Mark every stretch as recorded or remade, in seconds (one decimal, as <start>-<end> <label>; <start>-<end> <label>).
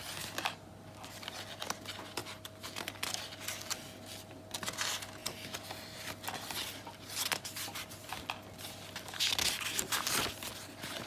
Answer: 0.0-11.1 recorded